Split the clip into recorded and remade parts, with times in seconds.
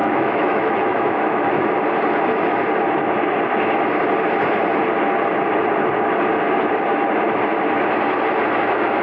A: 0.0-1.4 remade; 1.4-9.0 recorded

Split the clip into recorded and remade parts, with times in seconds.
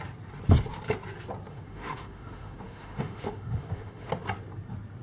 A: 0.0-1.5 recorded; 1.5-4.1 remade; 4.1-5.0 recorded